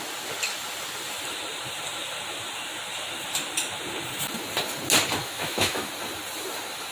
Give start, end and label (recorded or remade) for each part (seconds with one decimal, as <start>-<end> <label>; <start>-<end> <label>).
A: 0.0-5.2 recorded; 5.2-5.9 remade; 5.9-6.9 recorded